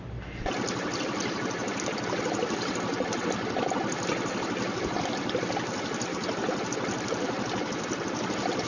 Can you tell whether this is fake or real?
real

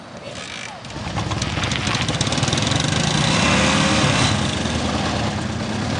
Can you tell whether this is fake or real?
real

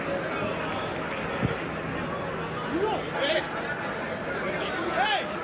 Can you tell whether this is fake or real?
real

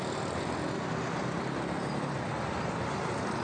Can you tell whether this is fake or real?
real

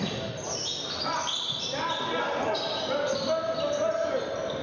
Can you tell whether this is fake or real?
real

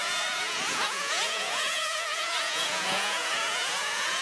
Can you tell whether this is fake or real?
fake